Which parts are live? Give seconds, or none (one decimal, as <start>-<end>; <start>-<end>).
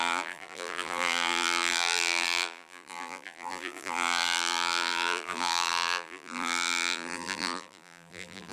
none